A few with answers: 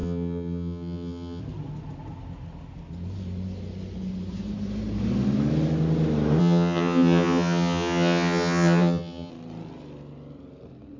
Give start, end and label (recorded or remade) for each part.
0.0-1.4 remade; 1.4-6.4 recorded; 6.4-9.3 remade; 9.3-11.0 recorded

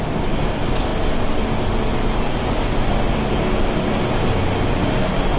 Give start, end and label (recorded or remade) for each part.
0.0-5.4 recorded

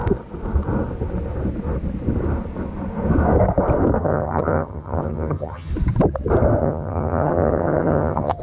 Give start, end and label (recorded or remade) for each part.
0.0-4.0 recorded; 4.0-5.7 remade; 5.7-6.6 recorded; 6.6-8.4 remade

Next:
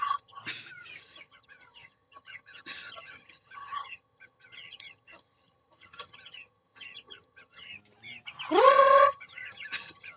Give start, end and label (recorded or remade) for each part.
0.0-0.4 remade; 0.4-1.0 recorded; 1.0-7.7 remade; 7.7-8.6 recorded; 8.6-10.2 remade

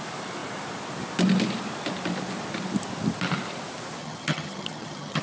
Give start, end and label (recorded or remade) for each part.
0.0-4.0 recorded; 4.0-5.2 remade